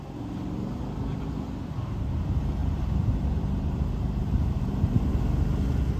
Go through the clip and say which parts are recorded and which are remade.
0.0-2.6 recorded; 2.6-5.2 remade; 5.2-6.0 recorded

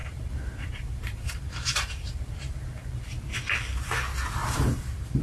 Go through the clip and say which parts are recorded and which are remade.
0.0-3.1 remade; 3.1-4.4 recorded; 4.4-5.2 remade

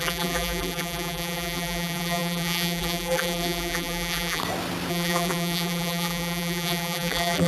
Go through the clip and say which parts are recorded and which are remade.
0.0-4.4 remade; 4.4-4.9 recorded; 4.9-7.5 remade

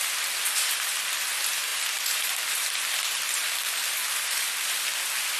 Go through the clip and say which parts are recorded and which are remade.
0.0-5.4 recorded

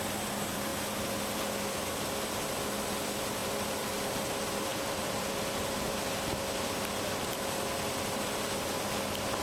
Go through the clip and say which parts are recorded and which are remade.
0.0-3.4 recorded; 3.4-4.0 remade; 4.0-4.7 recorded; 4.7-6.0 remade; 6.0-9.4 recorded

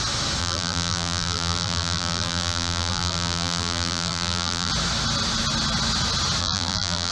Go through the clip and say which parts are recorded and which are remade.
0.0-0.4 recorded; 0.4-4.7 remade; 4.7-6.4 recorded; 6.4-7.1 remade